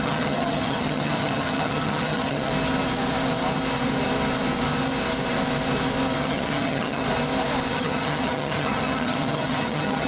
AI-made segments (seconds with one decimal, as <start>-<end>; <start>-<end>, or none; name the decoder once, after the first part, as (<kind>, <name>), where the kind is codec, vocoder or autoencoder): 0.0-2.5 (vocoder, HiFi-GAN); 6.2-7.0; 7.7-10.1